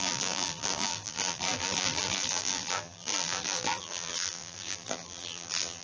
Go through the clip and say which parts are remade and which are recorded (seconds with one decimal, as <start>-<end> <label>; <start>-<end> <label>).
0.0-5.8 remade